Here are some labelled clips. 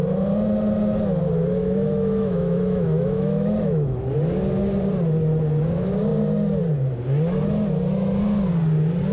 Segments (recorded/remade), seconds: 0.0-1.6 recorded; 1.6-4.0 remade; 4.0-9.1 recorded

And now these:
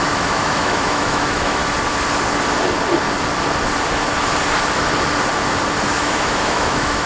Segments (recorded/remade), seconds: 0.0-1.6 remade; 1.6-5.9 recorded; 5.9-7.1 remade

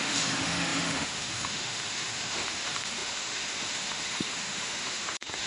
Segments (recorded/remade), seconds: 0.0-5.5 remade

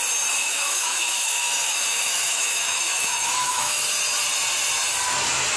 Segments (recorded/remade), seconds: 0.0-0.4 recorded; 0.4-3.8 remade; 3.8-5.6 recorded

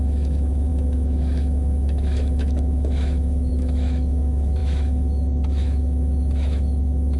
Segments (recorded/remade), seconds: 0.0-7.2 remade

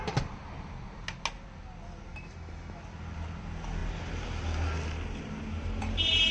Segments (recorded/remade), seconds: 0.0-2.1 recorded; 2.1-2.8 remade; 2.8-6.3 recorded